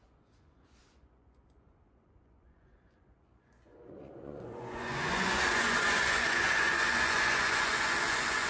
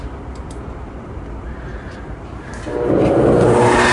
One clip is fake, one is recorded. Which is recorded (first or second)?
second